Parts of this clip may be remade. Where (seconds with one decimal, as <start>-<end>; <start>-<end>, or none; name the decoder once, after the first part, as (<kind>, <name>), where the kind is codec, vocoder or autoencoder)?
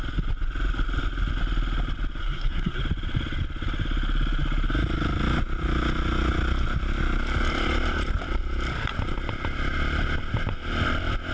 2.2-2.8 (codec, SNAC)